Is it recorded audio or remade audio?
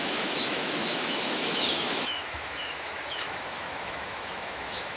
remade